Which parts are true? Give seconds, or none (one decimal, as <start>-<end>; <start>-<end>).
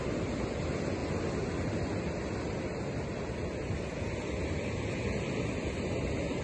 0.0-6.4